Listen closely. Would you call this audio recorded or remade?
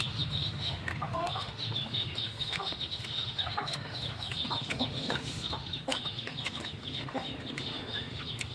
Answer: remade